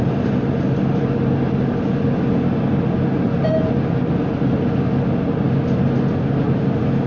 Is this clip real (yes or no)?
yes